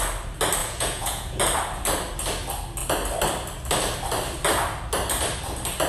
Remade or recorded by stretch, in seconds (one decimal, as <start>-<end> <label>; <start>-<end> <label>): 0.0-0.6 recorded; 0.6-1.4 remade; 1.4-5.9 recorded